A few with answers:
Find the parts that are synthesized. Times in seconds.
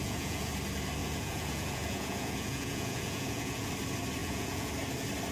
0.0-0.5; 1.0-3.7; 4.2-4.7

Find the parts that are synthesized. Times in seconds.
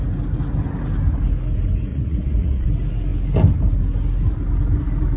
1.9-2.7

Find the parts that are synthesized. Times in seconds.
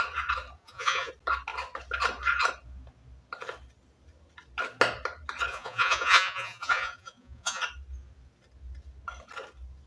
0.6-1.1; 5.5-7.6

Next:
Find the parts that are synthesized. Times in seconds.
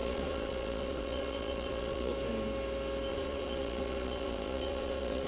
0.0-2.1; 3.1-5.3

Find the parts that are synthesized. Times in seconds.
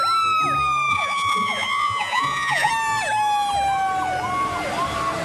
0.9-2.7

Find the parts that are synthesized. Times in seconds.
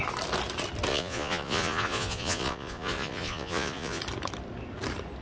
0.9-4.0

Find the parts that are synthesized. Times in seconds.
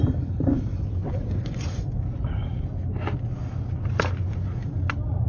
1.0-1.9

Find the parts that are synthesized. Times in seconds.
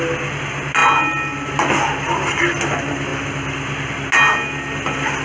none